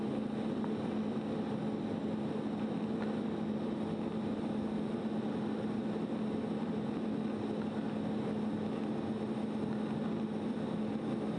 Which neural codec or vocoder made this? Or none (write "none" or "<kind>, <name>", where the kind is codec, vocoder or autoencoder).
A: none